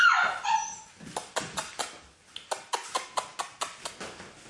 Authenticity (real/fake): real